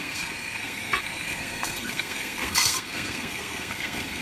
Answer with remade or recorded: remade